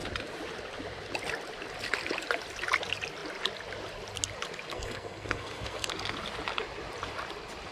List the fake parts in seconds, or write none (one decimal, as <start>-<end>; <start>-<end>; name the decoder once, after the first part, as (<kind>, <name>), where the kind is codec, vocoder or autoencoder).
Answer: 4.7-5.9 (codec, SNAC)